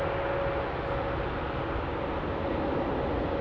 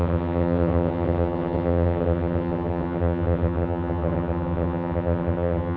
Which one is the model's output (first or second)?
second